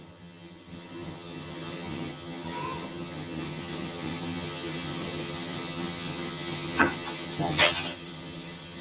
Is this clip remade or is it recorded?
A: remade